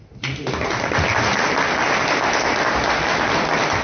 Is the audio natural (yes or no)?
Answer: yes